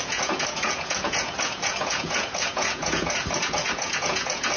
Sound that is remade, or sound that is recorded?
remade